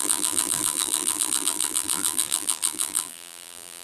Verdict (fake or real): fake